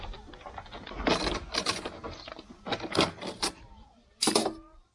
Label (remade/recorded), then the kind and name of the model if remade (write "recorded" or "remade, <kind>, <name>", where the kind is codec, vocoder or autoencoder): recorded